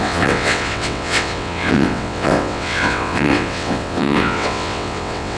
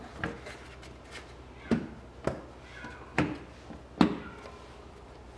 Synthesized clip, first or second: first